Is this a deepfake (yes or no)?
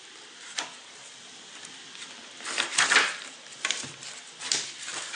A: yes